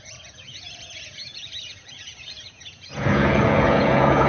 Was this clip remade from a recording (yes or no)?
yes